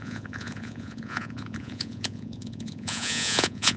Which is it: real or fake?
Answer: fake